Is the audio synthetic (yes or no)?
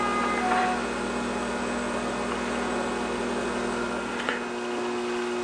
no